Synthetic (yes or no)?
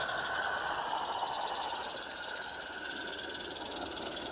no